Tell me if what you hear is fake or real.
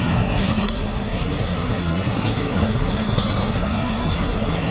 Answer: fake